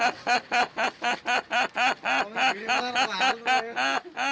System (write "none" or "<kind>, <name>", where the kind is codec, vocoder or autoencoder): none